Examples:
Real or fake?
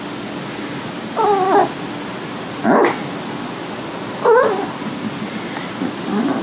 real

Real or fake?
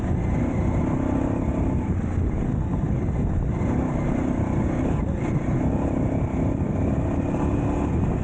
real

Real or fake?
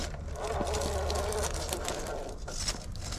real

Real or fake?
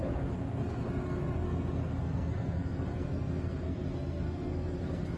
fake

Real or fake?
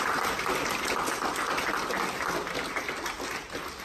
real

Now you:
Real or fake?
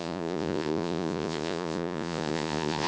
fake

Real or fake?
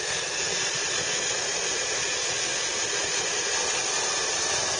real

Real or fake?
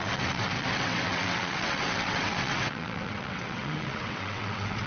fake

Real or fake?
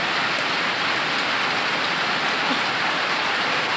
fake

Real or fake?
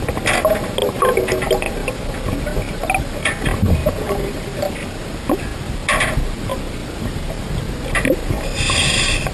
real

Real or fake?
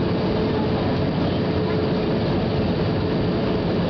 real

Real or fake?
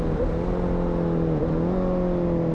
real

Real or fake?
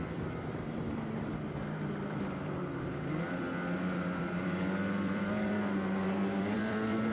fake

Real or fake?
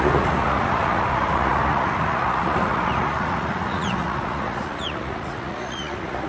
fake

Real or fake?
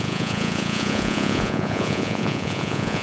fake